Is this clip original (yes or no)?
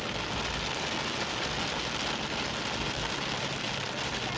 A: yes